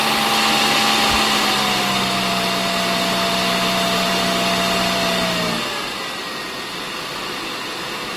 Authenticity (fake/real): real